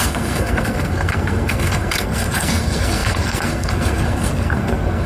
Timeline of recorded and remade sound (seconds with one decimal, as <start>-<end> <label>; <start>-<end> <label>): 0.0-5.1 remade